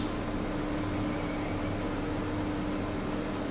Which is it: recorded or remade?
recorded